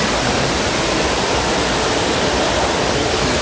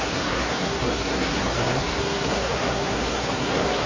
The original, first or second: first